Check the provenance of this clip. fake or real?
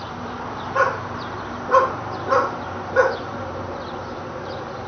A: fake